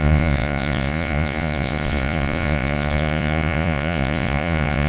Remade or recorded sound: remade